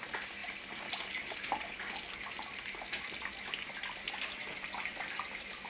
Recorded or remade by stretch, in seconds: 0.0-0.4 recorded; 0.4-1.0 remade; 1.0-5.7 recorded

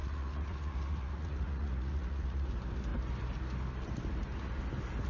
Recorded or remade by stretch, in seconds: 0.0-2.5 remade; 2.5-5.1 recorded

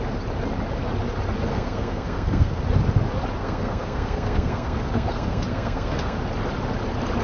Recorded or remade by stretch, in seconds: 0.0-1.5 recorded; 1.5-2.6 remade; 2.6-3.4 recorded; 3.4-6.2 remade; 6.2-7.2 recorded

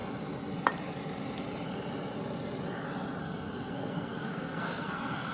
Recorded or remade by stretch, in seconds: 0.0-3.2 recorded; 3.2-5.3 remade